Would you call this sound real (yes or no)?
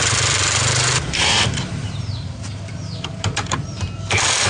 no